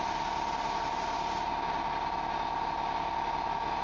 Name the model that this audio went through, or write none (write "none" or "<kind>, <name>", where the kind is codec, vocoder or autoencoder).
none